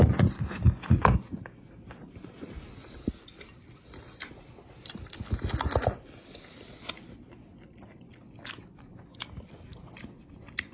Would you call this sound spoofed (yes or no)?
no